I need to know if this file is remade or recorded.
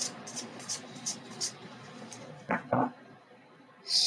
remade